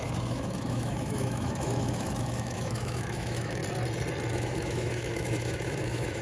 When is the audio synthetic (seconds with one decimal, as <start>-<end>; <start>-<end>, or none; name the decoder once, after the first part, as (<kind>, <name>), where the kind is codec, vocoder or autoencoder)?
0.0-3.6 (autoencoder, DAC-VAE); 4.3-6.2